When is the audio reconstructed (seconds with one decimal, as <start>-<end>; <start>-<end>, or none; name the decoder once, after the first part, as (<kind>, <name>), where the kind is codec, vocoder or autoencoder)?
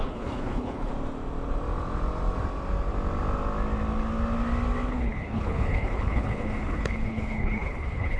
0.0-0.9 (codec, HILCodec); 4.9-8.2